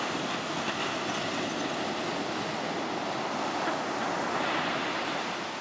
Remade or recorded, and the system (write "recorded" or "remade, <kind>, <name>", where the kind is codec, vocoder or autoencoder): recorded